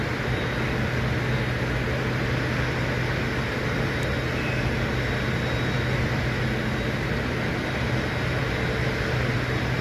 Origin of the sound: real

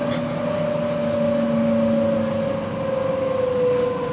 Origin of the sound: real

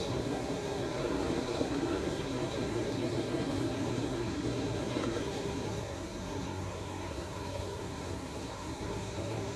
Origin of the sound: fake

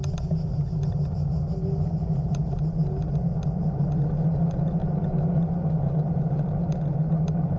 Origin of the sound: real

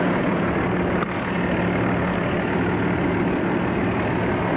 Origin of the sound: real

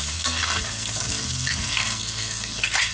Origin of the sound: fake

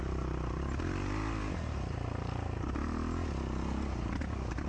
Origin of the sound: real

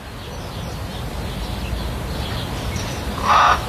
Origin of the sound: real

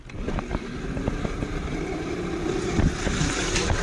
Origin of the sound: real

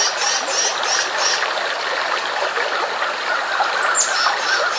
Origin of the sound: real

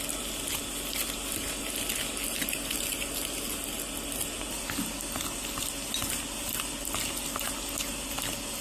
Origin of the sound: real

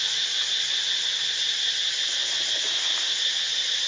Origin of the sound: real